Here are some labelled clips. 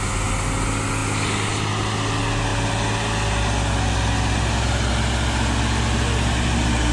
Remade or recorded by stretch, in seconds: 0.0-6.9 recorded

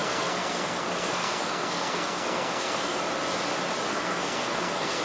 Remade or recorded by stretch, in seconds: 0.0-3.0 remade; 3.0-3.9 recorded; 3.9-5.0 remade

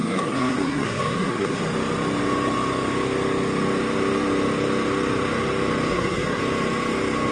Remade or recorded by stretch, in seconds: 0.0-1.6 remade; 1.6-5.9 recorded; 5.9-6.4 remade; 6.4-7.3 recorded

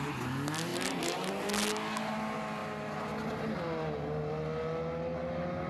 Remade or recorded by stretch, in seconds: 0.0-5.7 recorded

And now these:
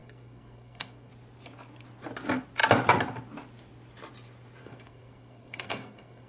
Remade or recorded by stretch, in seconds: 0.0-1.1 remade; 1.1-4.6 recorded; 4.6-6.3 remade

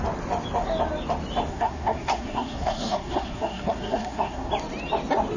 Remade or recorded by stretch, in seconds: 0.0-1.5 recorded; 1.5-4.5 remade; 4.5-5.4 recorded

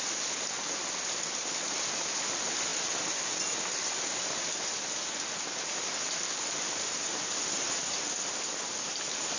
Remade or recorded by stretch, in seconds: 0.0-9.4 recorded

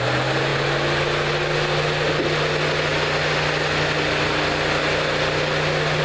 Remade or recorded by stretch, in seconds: 0.0-6.0 recorded